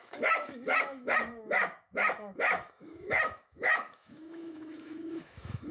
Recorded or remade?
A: remade